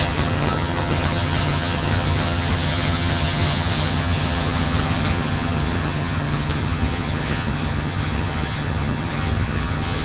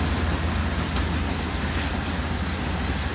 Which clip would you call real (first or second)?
second